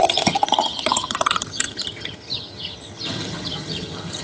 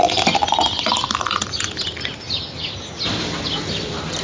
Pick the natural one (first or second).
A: second